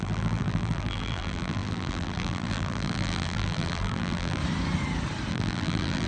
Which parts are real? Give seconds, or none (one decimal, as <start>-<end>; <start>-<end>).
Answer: 4.4-5.3